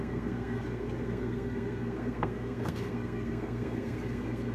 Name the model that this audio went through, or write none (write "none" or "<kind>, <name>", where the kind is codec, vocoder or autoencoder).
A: codec, SNAC